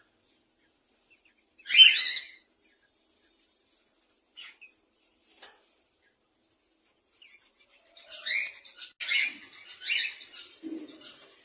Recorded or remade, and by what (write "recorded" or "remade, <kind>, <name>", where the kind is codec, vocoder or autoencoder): recorded